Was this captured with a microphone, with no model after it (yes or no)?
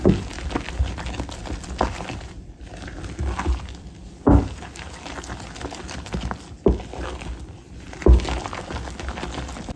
yes